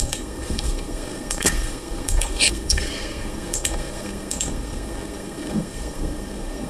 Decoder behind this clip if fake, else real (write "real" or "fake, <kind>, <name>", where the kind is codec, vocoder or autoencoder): fake, codec, SNAC